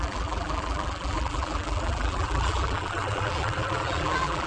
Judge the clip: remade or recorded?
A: remade